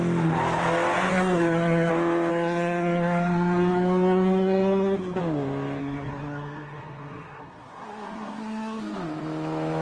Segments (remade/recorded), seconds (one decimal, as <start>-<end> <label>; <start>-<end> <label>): 0.0-1.1 recorded; 1.1-1.9 remade; 1.9-2.3 recorded; 2.3-5.2 remade; 5.2-5.8 recorded; 5.8-8.8 remade; 8.8-9.8 recorded